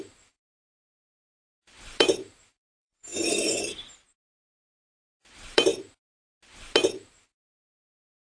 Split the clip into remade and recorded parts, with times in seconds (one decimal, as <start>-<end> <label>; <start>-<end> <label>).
0.0-5.7 remade; 5.7-7.5 recorded; 7.5-8.2 remade